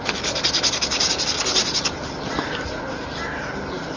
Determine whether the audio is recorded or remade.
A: recorded